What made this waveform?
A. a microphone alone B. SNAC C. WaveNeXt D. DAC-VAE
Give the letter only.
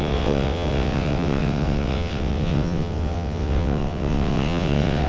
C